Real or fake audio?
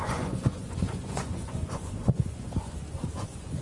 fake